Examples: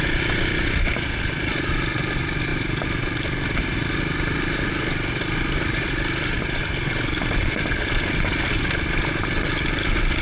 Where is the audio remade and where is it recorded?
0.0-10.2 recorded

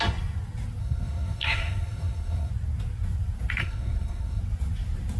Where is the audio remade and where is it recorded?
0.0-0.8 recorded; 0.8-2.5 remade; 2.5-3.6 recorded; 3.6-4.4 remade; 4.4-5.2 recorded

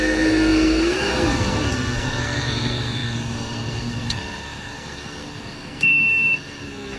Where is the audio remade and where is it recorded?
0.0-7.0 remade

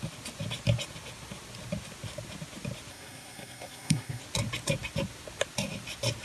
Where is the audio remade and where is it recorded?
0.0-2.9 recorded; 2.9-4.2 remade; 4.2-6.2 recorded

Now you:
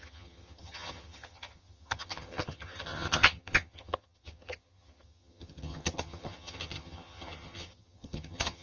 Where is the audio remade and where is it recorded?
0.0-8.6 remade

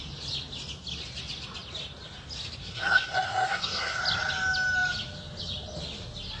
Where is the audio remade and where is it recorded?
0.0-2.6 recorded; 2.6-4.0 remade; 4.0-6.4 recorded

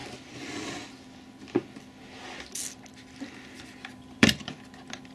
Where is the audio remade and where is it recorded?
0.0-3.9 recorded; 3.9-4.6 remade; 4.6-5.1 recorded

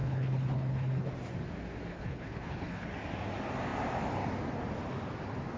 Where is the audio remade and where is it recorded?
0.0-1.1 remade; 1.1-1.9 recorded; 1.9-2.9 remade; 2.9-5.6 recorded